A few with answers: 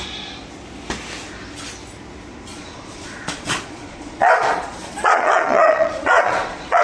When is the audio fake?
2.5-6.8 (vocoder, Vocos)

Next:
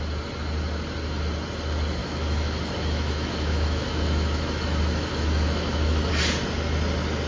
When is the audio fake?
2.0-6.1 (autoencoder, DAC-VAE)